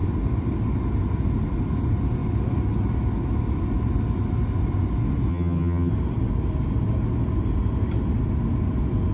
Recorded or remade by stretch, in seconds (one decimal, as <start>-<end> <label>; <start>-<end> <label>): 0.0-5.3 recorded; 5.3-5.9 remade; 5.9-9.1 recorded